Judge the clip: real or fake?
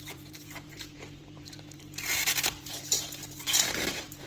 fake